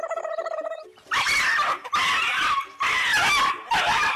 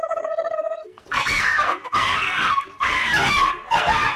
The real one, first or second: first